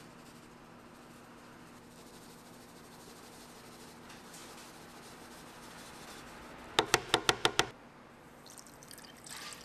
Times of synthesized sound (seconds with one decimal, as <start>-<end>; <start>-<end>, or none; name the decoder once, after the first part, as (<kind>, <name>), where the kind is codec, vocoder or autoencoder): none